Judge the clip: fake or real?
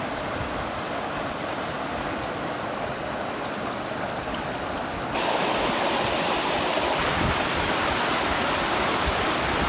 fake